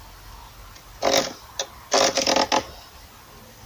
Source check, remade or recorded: recorded